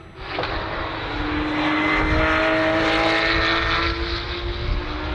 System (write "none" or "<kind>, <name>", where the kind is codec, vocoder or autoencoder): none